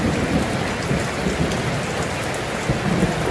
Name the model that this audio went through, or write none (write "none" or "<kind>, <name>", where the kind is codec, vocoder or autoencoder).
none